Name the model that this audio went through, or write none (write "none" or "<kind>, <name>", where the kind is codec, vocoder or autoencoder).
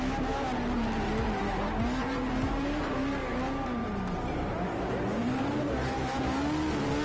none